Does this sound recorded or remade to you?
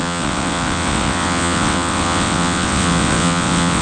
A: remade